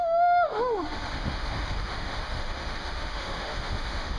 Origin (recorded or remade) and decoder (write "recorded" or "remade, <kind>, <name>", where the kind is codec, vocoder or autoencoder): remade, autoencoder, DAC-VAE